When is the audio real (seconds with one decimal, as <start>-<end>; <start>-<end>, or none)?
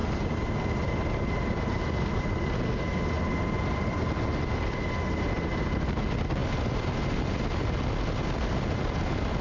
0.0-9.4